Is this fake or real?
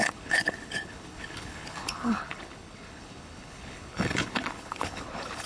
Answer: fake